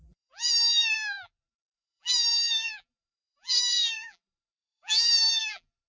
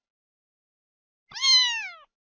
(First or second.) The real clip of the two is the second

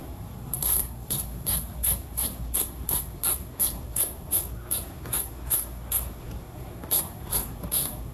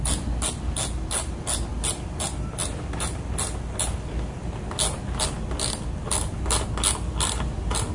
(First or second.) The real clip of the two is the second